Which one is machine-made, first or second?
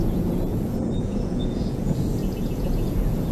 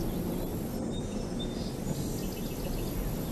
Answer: first